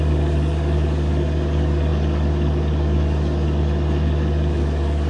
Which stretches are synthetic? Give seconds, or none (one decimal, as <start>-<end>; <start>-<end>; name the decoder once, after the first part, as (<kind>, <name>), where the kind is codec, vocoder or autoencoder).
0.0-5.1 (codec, DAC)